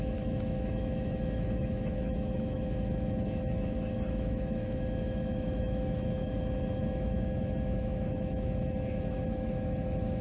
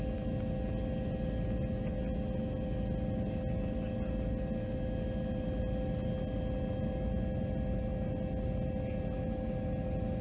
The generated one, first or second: first